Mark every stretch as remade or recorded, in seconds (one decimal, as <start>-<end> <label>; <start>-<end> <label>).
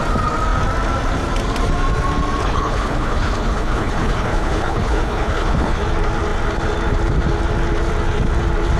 0.0-2.4 recorded; 2.4-5.8 remade; 5.8-8.8 recorded